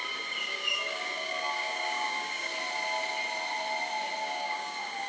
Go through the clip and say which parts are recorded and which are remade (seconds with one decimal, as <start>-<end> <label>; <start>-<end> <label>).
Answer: 0.0-2.5 remade; 2.5-4.2 recorded; 4.2-5.1 remade